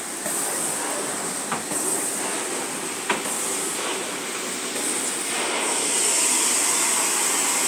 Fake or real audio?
real